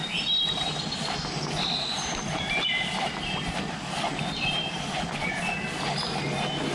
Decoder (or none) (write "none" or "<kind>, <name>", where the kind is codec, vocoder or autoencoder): none